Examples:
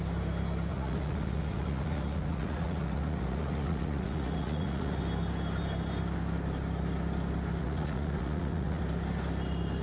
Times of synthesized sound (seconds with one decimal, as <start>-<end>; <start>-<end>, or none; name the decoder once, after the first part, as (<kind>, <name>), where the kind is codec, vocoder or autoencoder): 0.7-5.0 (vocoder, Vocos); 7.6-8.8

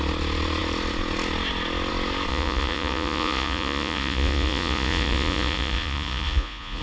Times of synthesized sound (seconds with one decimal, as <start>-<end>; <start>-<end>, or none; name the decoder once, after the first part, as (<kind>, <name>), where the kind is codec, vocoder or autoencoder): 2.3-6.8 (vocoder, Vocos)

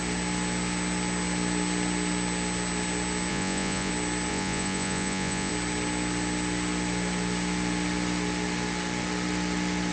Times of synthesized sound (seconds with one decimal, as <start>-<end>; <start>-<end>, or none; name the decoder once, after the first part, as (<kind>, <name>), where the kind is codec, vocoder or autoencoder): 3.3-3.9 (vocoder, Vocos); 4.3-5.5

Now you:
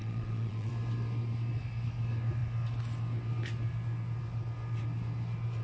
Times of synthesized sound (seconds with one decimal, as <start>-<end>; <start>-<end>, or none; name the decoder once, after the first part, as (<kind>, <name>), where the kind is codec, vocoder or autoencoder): 0.0-0.7 (vocoder, Vocos)

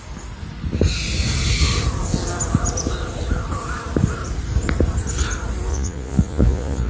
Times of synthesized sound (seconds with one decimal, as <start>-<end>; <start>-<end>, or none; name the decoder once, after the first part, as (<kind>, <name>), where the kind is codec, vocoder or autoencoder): 5.7-6.9 (vocoder, Vocos)

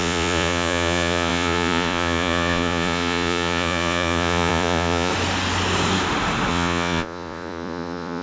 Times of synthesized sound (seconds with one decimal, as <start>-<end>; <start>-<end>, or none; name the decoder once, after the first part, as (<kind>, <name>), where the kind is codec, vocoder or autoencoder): 0.0-5.1 (vocoder, Vocos); 6.5-8.2